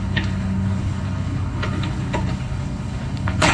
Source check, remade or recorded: remade